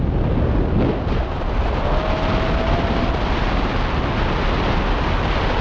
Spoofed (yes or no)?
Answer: no